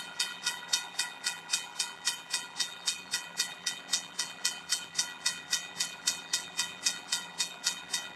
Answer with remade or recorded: remade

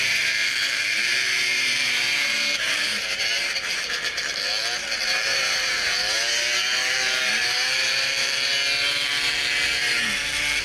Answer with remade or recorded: remade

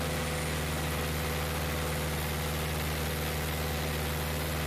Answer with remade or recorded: recorded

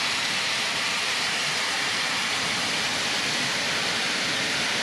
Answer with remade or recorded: remade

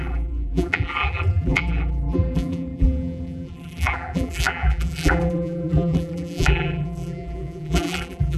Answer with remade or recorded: remade